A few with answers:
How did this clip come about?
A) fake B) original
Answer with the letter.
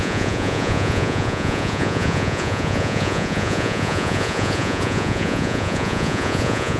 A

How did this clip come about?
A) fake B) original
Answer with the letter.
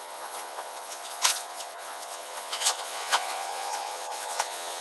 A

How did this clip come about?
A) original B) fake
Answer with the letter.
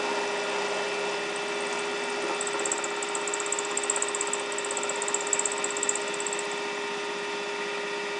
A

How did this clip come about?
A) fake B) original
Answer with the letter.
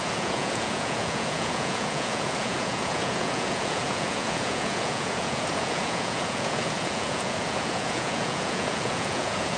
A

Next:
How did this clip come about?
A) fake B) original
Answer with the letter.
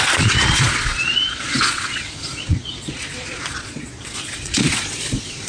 A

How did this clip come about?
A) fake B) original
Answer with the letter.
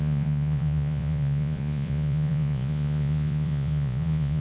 A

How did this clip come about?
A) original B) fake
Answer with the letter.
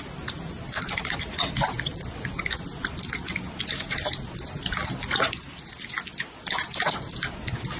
A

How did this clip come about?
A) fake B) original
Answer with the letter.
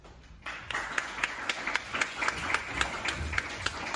A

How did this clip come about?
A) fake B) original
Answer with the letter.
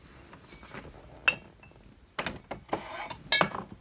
B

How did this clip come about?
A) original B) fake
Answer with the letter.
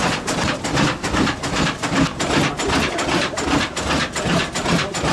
A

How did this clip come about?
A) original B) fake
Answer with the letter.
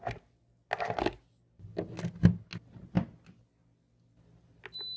A